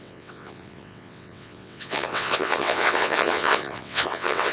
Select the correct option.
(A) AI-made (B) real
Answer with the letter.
A